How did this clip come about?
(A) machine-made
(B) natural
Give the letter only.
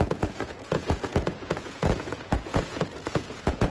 A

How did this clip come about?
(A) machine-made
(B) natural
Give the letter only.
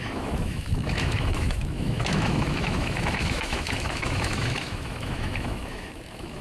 A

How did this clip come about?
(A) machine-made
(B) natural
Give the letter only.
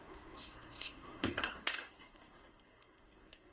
A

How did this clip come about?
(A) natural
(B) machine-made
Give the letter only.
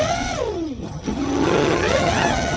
B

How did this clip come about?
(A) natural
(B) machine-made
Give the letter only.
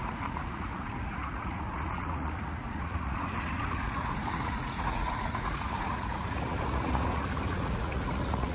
B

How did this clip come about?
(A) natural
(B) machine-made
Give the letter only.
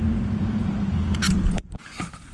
B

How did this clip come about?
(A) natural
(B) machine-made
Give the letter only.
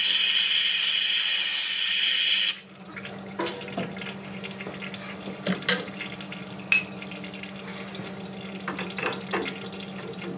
A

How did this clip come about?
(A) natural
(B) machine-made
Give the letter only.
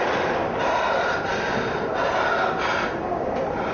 A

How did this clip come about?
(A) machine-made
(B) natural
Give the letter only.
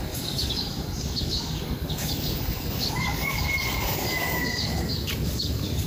A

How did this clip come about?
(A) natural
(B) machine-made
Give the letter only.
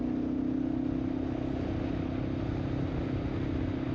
A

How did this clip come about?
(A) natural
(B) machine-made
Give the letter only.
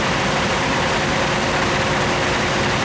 A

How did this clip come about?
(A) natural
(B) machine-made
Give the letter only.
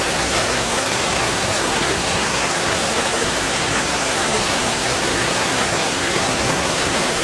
B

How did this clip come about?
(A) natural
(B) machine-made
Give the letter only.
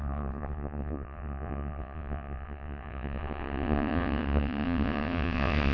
B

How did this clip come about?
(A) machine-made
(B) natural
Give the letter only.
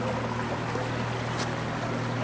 B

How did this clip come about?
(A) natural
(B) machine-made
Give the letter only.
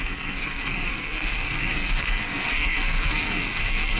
B